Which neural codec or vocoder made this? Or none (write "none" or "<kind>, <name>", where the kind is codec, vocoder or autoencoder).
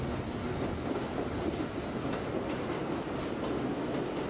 none